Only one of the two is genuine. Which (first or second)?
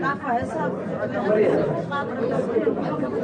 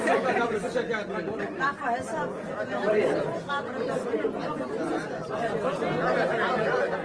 second